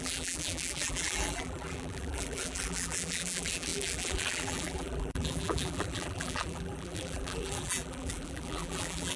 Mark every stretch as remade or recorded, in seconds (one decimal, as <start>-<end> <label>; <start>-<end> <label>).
0.0-9.2 remade